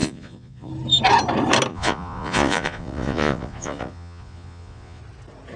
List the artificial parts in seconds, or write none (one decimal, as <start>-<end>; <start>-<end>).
0.0-0.7; 1.7-5.0